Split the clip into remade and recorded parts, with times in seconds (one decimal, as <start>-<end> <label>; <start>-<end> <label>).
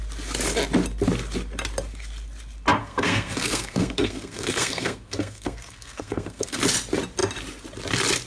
0.0-2.8 recorded; 2.8-6.6 remade; 6.6-8.3 recorded